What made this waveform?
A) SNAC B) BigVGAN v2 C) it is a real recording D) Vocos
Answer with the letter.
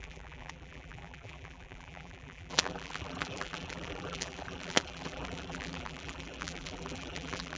B